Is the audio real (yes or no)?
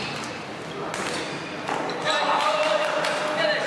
yes